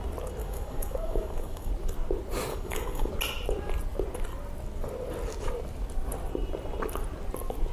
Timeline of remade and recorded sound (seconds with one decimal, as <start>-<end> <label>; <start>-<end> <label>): 0.0-0.4 recorded; 0.4-1.7 remade; 1.7-2.5 recorded; 2.5-3.1 remade; 3.1-7.7 recorded